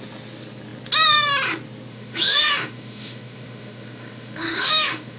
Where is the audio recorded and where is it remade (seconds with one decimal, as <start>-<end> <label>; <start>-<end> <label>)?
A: 0.0-1.9 recorded; 1.9-5.2 remade